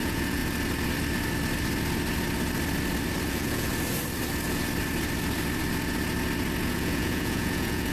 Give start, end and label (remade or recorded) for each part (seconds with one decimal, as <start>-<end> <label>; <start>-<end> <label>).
0.0-0.4 remade; 0.4-3.3 recorded; 3.3-3.7 remade; 3.7-6.6 recorded; 6.6-7.9 remade